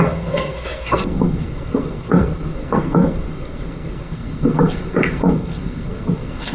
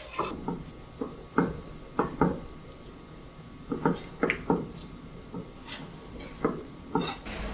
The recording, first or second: second